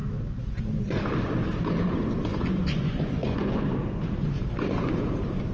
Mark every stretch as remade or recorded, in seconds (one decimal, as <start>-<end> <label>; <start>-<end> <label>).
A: 0.0-2.3 recorded; 2.3-3.6 remade; 3.6-5.5 recorded